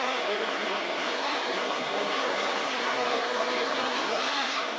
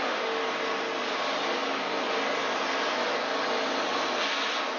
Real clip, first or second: second